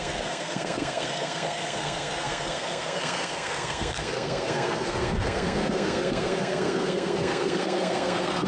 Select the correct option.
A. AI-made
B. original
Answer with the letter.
A